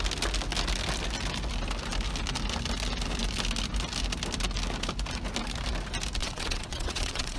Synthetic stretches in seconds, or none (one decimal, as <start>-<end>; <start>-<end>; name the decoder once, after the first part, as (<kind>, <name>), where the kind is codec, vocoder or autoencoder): 6.2-7.4 (vocoder, WaveNeXt)